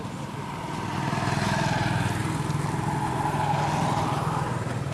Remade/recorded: recorded